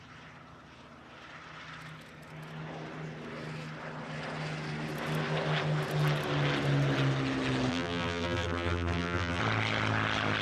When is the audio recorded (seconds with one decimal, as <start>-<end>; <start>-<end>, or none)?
0.0-7.7; 9.4-10.4